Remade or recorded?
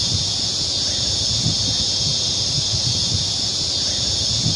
recorded